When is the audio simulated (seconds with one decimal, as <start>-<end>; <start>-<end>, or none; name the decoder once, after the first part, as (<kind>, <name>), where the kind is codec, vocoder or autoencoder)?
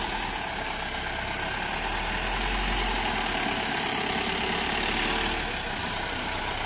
5.8-6.7 (vocoder, BigVGAN v2)